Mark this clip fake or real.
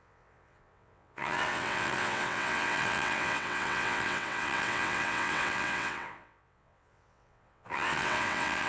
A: fake